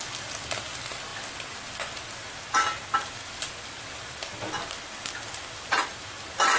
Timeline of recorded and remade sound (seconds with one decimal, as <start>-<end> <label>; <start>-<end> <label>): 0.0-6.6 recorded